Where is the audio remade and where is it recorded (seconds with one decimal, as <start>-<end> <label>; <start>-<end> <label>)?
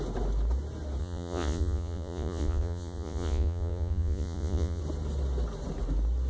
0.0-1.0 recorded; 1.0-4.8 remade; 4.8-6.3 recorded